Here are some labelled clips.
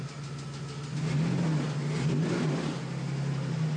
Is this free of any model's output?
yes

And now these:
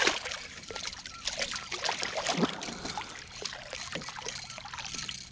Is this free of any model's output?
yes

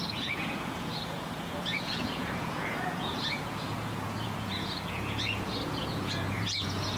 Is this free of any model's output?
no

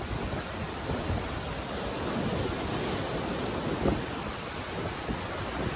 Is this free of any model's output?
yes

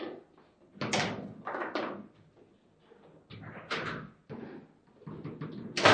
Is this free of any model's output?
yes